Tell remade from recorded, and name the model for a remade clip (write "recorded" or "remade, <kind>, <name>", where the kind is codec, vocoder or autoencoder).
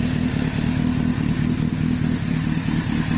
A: recorded